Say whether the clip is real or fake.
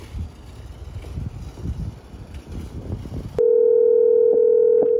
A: real